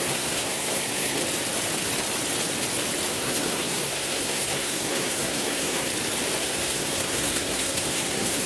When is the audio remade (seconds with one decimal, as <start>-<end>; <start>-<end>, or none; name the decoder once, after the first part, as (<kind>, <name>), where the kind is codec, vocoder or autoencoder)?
0.0-1.2 (codec, SNAC); 3.1-5.9; 6.4-8.5